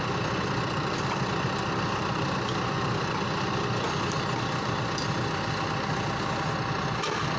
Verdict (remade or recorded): recorded